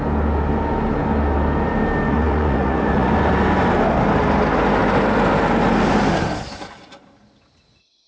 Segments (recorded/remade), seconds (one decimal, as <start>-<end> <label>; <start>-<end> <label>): 0.0-2.1 recorded; 2.1-3.1 remade; 3.1-8.1 recorded